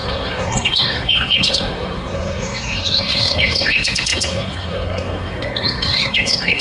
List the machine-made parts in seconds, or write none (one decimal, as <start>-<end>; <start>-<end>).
0.0-6.6